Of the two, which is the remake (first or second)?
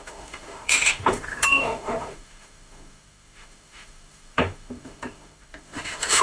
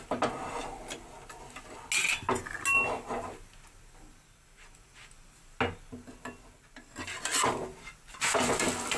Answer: first